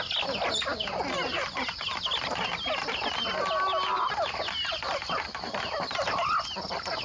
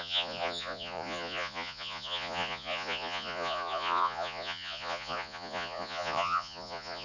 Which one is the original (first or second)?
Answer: first